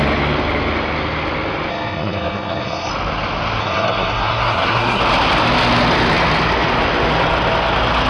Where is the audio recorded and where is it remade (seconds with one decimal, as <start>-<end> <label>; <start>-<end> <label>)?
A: 0.0-1.7 recorded; 1.7-2.9 remade; 2.9-3.6 recorded; 3.6-5.0 remade; 5.0-8.1 recorded